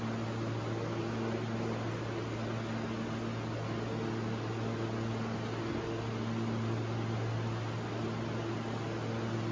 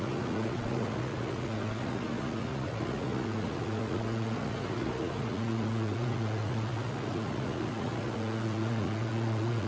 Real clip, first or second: first